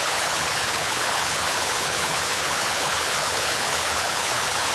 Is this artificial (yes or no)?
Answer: yes